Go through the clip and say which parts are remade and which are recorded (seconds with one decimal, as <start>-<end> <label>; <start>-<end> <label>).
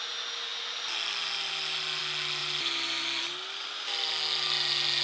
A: 0.0-2.4 recorded; 2.4-3.2 remade; 3.2-5.0 recorded